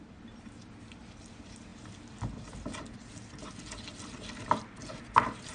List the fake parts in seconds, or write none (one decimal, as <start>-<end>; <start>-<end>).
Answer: none